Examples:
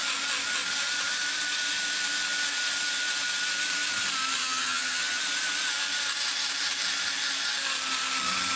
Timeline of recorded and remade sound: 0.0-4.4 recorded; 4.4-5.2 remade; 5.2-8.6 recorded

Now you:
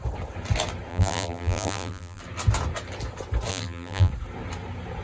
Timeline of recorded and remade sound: 0.0-0.9 recorded; 0.9-2.2 remade; 2.2-3.5 recorded; 3.5-4.1 remade; 4.1-5.0 recorded

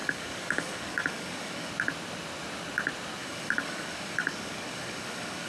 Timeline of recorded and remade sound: 0.0-1.7 remade; 1.7-3.2 recorded; 3.2-5.5 remade

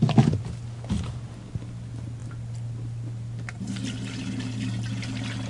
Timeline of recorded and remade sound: 0.0-5.5 recorded

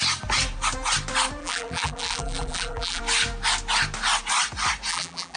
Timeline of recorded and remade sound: 0.0-1.4 recorded; 1.4-3.0 remade; 3.0-4.9 recorded; 4.9-5.4 remade

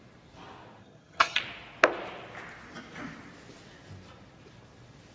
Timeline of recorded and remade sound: 0.0-0.8 recorded; 0.8-1.4 remade; 1.4-5.1 recorded

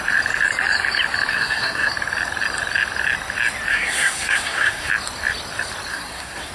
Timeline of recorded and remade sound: 0.0-1.3 recorded; 1.3-1.9 remade; 1.9-3.7 recorded; 3.7-4.9 remade; 4.9-5.9 recorded; 5.9-6.5 remade